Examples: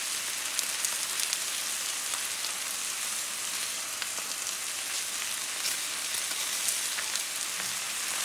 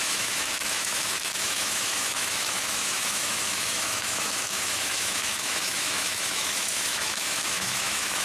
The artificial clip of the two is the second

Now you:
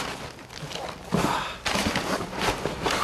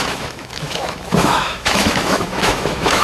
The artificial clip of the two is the second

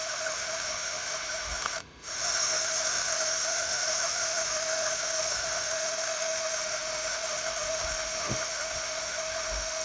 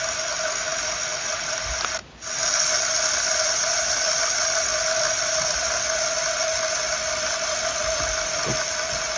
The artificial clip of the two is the first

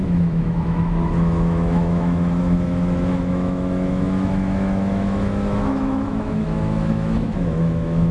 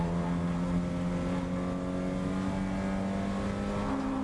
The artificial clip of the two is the first